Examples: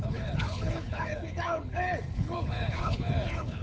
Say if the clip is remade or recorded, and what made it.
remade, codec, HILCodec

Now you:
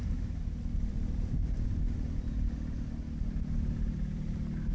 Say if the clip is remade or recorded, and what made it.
recorded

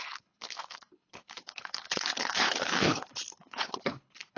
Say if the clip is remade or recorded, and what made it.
remade, codec, HILCodec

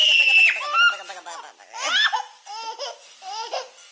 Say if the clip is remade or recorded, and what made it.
recorded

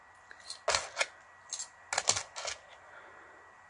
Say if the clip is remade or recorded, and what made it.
recorded